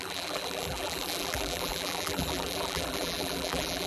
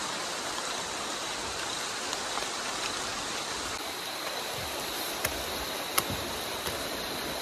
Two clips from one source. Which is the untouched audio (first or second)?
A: second